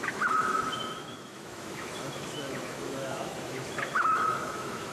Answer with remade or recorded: remade